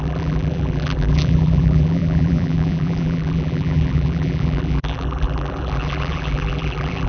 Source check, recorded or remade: remade